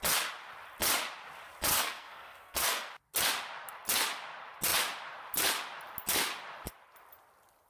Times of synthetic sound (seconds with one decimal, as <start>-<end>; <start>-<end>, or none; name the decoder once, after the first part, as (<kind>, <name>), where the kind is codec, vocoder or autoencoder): 1.7-2.9 (codec, SNAC)